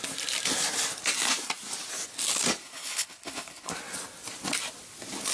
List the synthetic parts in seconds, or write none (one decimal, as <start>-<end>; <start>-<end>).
2.6-3.7

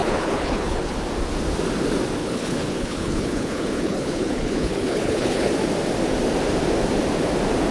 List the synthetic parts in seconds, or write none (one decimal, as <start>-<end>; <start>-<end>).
0.0-1.0; 2.2-5.5

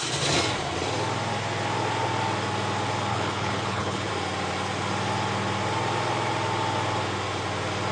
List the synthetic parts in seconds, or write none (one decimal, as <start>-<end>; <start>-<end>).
3.1-4.1

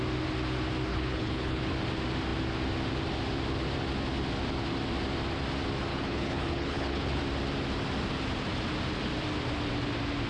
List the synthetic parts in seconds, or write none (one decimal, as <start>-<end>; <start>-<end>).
0.9-1.6; 5.9-7.2